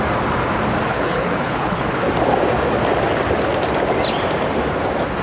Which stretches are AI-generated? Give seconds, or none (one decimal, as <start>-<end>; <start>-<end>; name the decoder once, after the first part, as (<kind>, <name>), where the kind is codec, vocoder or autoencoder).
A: 0.9-1.9 (codec, HILCodec)